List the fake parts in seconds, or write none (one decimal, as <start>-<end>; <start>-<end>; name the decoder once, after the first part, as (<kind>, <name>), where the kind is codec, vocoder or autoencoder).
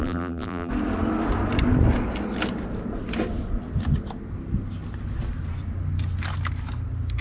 0.0-0.7 (vocoder, BigVGAN v2)